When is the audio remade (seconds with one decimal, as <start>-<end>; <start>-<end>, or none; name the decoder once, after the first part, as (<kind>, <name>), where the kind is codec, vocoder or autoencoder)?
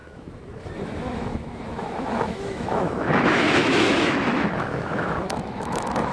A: 0.0-6.1 (autoencoder, DAC-VAE)